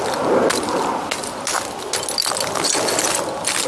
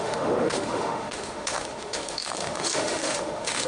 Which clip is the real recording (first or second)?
first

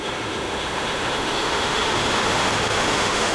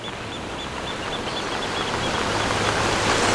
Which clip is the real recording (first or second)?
second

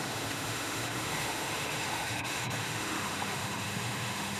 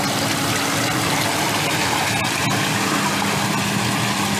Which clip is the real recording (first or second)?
second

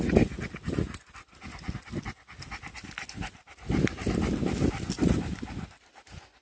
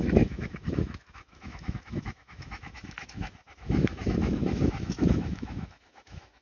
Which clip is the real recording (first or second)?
first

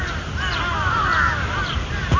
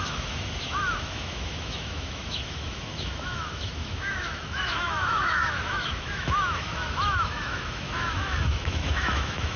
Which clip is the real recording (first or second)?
first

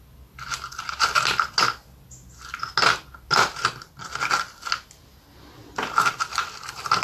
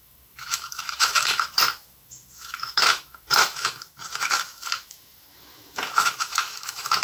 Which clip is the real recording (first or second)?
first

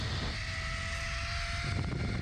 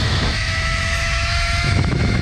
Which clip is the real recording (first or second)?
first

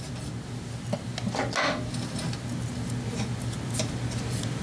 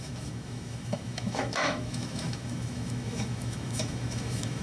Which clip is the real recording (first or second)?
first